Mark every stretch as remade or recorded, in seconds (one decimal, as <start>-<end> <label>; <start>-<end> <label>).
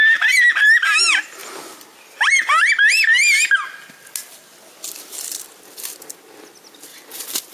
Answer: 0.0-6.9 recorded; 6.9-7.5 remade